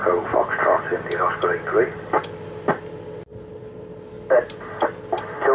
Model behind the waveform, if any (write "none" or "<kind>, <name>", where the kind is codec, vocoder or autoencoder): none